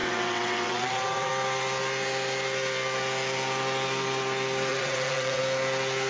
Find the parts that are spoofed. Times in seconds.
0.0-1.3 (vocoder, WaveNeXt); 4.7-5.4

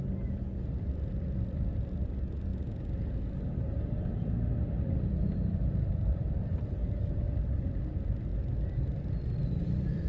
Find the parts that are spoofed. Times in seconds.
0.0-2.5 (vocoder, BigVGAN v2); 4.2-8.3; 8.8-10.1

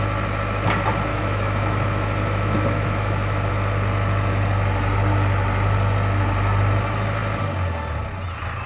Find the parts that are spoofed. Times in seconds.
1.1-3.5 (autoencoder, DAC-VAE)

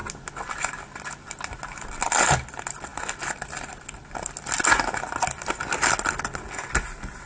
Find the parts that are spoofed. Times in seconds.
none

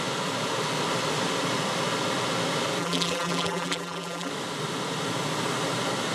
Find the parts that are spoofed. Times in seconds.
2.8-4.3 (vocoder, BigVGAN v2)

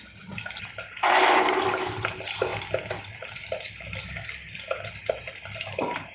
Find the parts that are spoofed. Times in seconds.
none

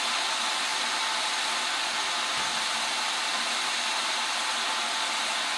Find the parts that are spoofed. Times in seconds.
0.7-1.9 (vocoder, BigVGAN v2); 2.7-4.0

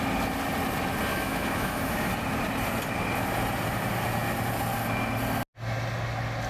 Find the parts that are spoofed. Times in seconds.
1.1-2.1 (autoencoder, DAC-VAE)